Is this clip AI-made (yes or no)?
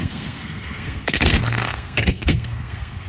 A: yes